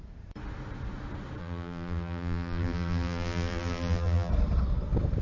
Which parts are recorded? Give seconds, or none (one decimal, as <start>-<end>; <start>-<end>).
0.0-1.4; 4.3-5.2